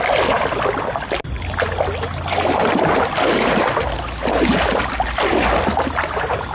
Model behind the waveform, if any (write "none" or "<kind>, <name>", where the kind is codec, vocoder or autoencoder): none